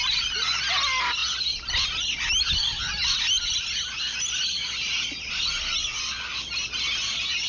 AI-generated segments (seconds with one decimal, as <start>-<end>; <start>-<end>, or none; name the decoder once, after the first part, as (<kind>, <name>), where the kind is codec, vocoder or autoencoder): none